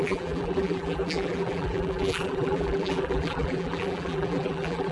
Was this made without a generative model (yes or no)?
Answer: no